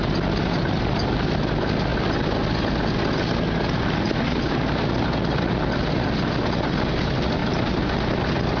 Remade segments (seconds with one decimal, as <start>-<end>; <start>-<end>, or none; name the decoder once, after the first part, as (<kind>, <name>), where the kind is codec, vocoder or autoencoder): none